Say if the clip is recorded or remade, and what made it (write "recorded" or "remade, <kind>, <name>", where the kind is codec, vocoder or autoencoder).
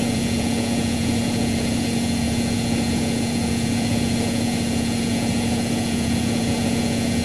remade, vocoder, Vocos